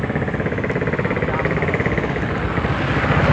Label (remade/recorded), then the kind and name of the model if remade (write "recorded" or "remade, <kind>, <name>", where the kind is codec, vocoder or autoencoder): recorded